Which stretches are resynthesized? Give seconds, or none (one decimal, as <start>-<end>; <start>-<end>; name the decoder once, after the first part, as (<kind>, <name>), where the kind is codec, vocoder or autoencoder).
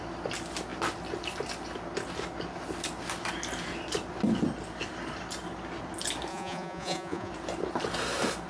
6.3-7.3 (vocoder, Vocos)